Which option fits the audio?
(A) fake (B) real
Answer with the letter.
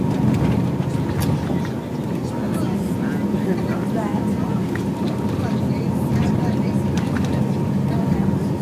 B